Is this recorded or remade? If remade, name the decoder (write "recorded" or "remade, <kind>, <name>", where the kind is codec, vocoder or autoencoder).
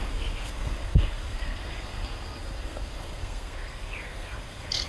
remade, codec, SNAC